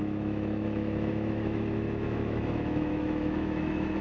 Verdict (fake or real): fake